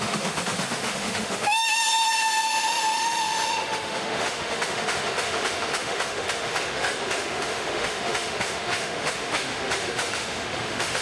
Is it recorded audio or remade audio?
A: remade